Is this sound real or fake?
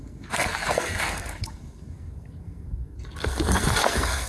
fake